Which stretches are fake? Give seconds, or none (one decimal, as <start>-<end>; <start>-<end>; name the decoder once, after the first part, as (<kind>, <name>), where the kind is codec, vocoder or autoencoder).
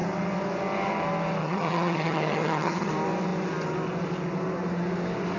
1.4-2.9 (vocoder, HiFi-GAN)